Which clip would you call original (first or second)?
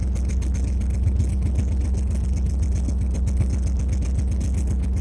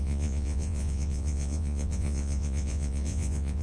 first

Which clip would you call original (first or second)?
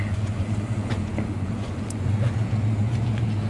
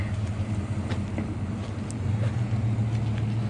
second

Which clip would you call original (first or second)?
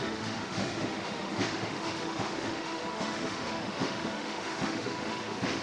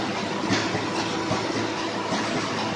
second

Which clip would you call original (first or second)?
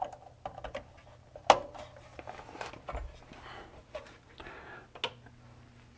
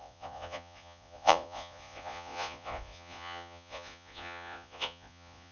first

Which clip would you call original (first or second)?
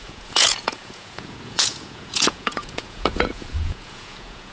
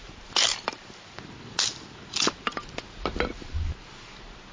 second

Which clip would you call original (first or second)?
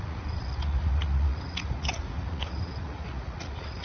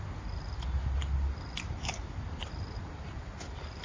second